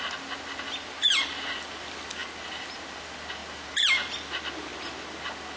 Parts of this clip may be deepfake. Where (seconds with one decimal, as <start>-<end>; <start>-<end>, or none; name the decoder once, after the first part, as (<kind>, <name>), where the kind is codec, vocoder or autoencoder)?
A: none

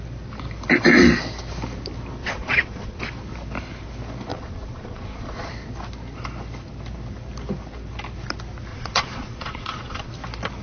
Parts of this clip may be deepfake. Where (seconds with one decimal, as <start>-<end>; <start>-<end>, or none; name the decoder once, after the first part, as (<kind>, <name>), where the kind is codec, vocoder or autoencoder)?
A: 2.2-3.0 (vocoder, Vocos); 4.3-5.5; 8.7-10.1

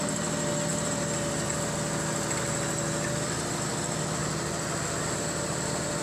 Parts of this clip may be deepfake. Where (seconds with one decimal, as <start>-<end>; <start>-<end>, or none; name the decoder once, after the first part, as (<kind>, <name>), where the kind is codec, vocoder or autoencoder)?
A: none

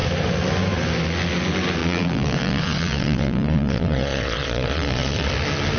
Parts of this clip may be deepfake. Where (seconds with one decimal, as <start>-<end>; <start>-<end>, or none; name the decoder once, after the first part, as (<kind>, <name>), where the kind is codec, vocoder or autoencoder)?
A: 1.8-5.3 (vocoder, Vocos)

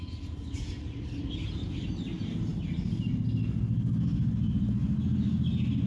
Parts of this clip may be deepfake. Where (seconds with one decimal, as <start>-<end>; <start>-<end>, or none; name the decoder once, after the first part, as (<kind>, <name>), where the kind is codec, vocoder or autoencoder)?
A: none

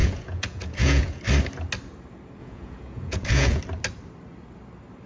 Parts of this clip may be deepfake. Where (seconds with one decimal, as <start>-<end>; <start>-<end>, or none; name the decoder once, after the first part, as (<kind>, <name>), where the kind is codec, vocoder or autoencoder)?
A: 0.0-1.2 (vocoder, Vocos); 2.4-3.6